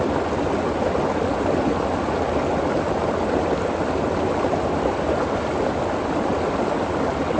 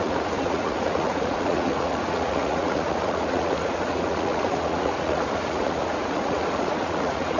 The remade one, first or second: second